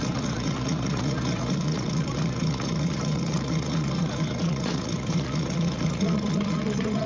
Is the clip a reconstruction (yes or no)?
yes